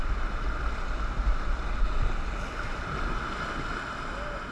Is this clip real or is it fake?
real